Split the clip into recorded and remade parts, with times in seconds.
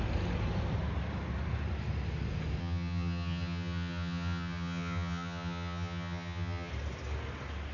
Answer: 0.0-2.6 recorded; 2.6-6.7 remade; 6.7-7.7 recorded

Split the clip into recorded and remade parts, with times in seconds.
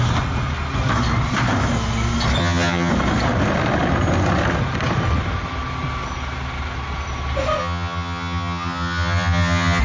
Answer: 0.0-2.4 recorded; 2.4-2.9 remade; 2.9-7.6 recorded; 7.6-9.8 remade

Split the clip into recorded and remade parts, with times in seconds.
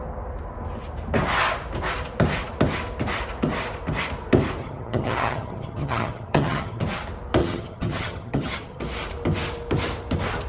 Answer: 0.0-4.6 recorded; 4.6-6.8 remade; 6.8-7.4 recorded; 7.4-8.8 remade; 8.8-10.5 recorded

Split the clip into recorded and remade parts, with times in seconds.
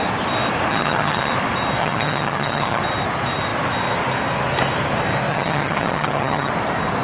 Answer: 0.0-0.7 recorded; 0.7-1.3 remade; 1.3-1.8 recorded; 1.8-2.8 remade; 2.8-5.3 recorded; 5.3-6.5 remade; 6.5-7.0 recorded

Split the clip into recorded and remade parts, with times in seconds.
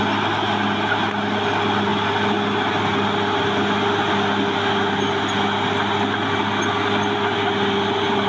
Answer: 0.0-8.3 recorded